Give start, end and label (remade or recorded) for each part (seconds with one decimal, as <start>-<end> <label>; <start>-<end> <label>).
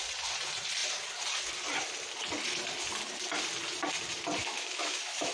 0.0-4.4 recorded; 4.4-5.3 remade